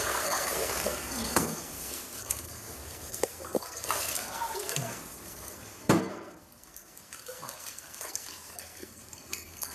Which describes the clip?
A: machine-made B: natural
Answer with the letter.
A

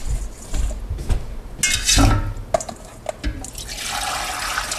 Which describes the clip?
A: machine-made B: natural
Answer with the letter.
B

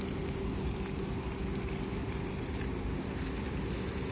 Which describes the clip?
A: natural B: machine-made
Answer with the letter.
A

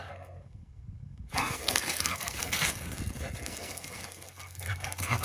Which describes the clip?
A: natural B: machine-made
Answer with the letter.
B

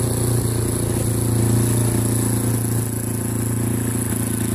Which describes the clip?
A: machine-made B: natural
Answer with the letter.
B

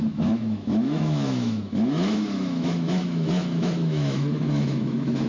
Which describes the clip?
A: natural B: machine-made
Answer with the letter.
B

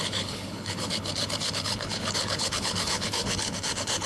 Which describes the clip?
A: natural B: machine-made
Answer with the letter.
B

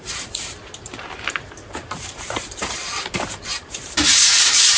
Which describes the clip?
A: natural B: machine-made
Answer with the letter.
B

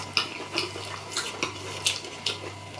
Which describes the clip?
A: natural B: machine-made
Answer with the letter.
A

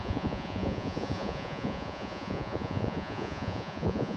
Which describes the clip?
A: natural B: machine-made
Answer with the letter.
B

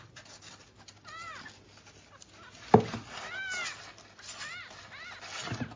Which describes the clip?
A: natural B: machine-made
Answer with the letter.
A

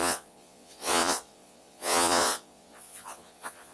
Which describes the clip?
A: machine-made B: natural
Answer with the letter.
A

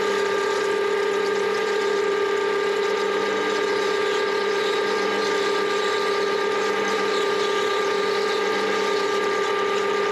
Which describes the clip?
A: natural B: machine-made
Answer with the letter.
A